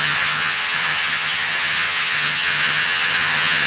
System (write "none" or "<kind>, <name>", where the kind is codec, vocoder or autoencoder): vocoder, HiFi-GAN